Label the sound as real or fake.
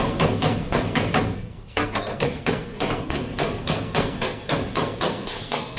fake